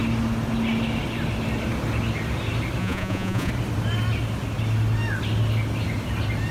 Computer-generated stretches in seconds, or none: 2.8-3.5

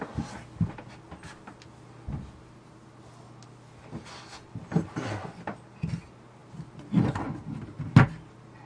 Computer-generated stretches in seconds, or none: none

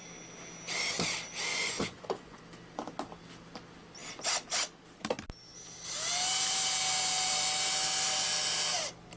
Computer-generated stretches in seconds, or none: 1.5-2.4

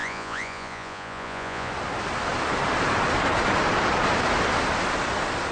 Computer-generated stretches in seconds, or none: 0.0-1.7

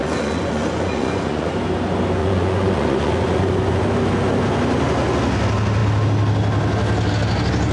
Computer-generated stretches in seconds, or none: 0.0-1.5; 2.2-3.8